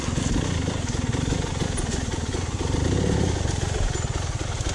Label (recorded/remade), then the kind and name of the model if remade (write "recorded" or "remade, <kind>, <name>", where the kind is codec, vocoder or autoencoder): recorded